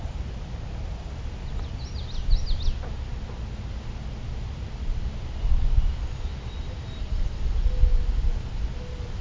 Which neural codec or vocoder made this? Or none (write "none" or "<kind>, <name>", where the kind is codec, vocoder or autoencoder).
none